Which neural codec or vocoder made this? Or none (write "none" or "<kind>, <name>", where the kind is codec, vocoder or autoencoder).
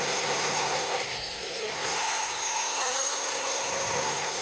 codec, SNAC